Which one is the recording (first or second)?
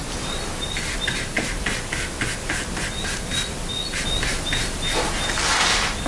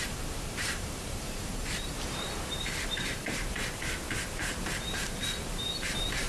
first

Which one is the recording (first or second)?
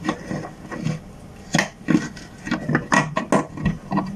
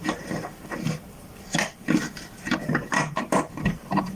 first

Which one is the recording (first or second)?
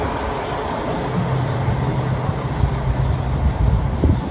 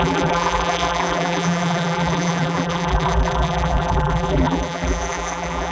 first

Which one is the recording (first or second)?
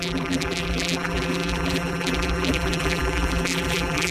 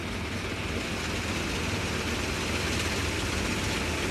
second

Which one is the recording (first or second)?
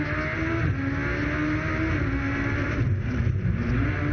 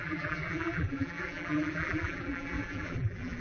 first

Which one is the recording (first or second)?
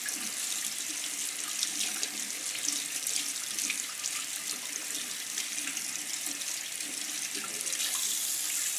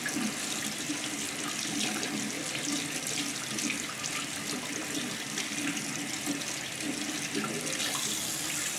second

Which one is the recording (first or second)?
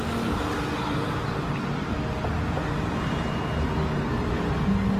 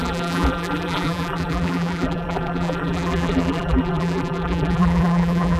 first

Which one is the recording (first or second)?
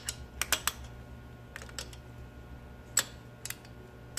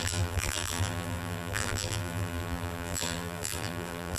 first